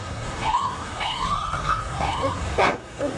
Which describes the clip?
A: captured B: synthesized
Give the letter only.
B